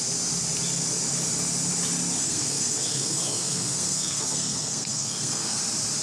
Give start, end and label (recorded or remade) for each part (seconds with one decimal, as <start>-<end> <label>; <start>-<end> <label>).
0.0-2.2 recorded; 2.2-5.6 remade; 5.6-6.0 recorded